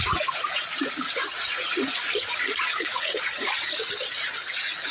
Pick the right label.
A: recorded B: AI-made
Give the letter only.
B